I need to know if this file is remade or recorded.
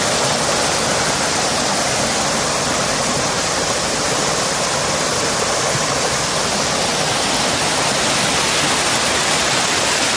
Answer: recorded